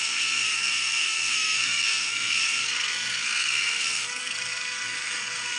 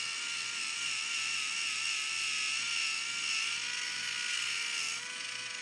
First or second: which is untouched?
second